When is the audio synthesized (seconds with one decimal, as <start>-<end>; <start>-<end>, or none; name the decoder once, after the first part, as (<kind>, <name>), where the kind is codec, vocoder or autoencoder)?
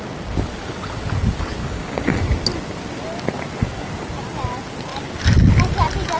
1.6-2.2 (codec, DAC)